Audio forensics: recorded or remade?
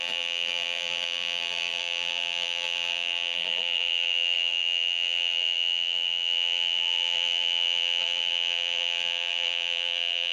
remade